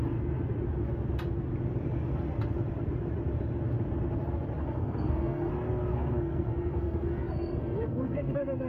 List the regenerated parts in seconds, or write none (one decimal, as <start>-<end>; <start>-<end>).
4.6-5.5; 5.9-8.7